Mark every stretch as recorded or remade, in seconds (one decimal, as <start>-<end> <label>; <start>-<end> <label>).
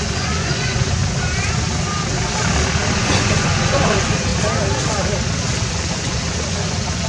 0.0-1.0 remade; 1.0-3.0 recorded; 3.0-4.3 remade; 4.3-5.7 recorded; 5.7-7.1 remade